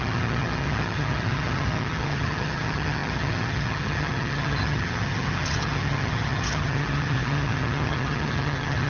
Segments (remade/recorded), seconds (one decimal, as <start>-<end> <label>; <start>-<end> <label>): 0.0-8.9 remade